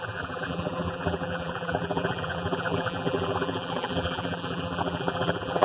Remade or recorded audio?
remade